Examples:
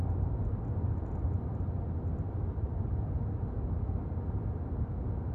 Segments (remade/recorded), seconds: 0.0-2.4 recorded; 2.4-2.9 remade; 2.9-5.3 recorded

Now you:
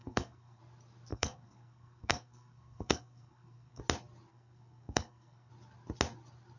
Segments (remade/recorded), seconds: 0.0-0.6 remade; 0.6-1.1 recorded; 1.1-3.8 remade; 3.8-4.3 recorded; 4.3-5.5 remade; 5.5-6.6 recorded

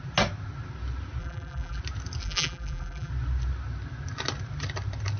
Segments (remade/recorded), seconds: 0.0-1.2 recorded; 1.2-1.8 remade; 1.8-2.2 recorded; 2.2-3.1 remade; 3.1-5.2 recorded

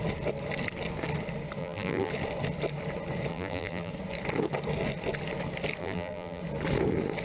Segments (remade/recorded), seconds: 0.0-1.6 recorded; 1.6-2.1 remade; 2.1-3.3 recorded; 3.3-3.9 remade; 3.9-5.8 recorded; 5.8-6.4 remade; 6.4-7.2 recorded

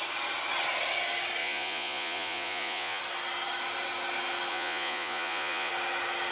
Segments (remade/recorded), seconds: 0.0-1.4 recorded; 1.4-3.0 remade; 3.0-4.5 recorded; 4.5-5.7 remade; 5.7-6.3 recorded

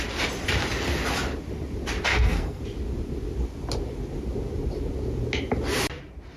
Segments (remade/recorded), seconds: 0.0-2.1 recorded; 2.1-2.6 remade; 2.6-6.4 recorded

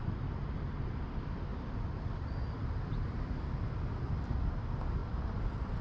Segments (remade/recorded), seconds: 0.0-5.8 recorded

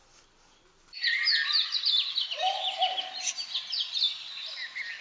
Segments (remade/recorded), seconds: 0.0-5.0 recorded